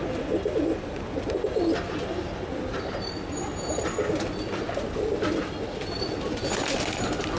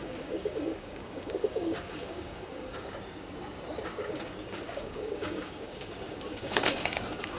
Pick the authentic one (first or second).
first